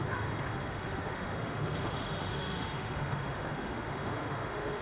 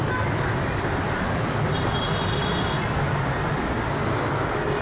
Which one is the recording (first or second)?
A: second